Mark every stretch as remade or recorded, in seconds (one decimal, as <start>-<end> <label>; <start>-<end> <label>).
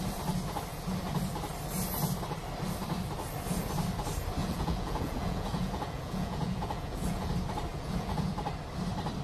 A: 0.0-4.4 recorded; 4.4-7.3 remade; 7.3-7.7 recorded; 7.7-8.3 remade; 8.3-9.2 recorded